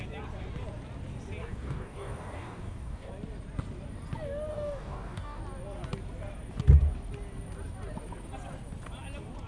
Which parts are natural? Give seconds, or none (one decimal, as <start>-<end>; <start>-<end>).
0.0-1.4; 3.1-4.5; 5.4-9.5